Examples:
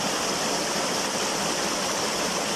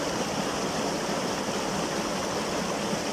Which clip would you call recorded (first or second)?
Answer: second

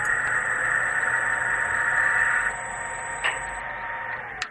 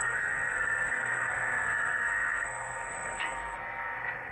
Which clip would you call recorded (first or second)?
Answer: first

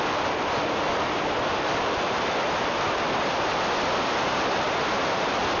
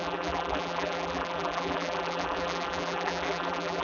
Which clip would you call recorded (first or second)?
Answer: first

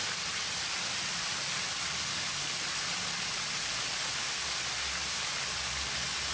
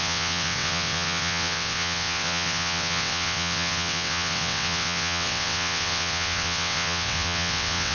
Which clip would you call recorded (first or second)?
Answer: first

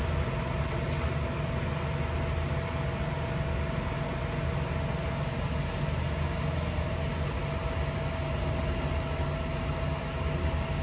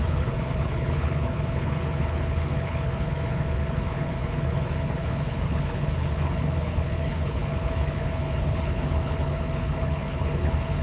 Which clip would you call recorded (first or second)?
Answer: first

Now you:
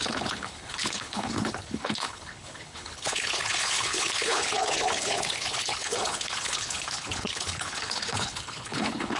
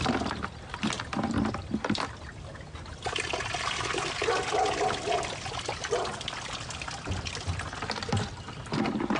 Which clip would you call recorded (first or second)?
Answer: second